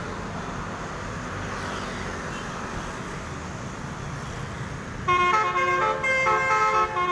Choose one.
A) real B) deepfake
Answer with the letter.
A